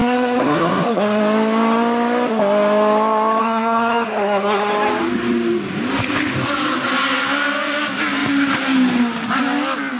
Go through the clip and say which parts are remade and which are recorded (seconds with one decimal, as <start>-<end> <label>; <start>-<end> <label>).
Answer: 0.0-1.2 remade; 1.2-3.4 recorded; 3.4-4.7 remade; 4.7-10.0 recorded